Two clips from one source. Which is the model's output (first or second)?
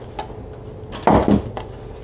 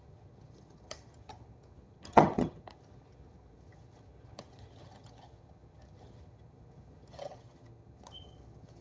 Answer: second